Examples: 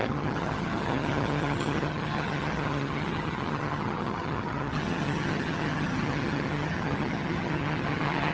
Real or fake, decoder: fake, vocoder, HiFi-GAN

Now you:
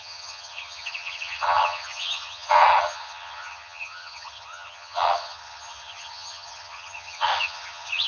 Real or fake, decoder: fake, vocoder, HiFi-GAN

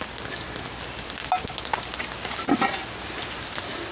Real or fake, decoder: real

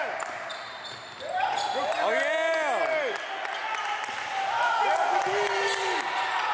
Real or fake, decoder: real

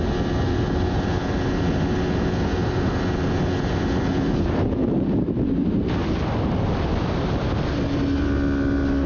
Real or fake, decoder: real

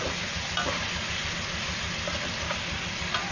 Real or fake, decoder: real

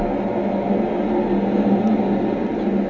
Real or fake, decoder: real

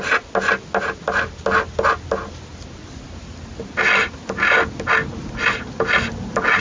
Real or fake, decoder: real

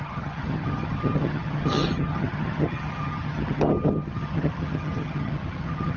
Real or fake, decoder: fake, vocoder, HiFi-GAN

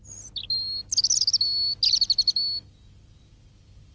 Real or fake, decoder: real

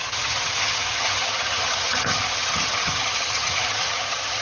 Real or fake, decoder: fake, vocoder, HiFi-GAN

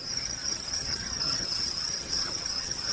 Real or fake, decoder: fake, vocoder, HiFi-GAN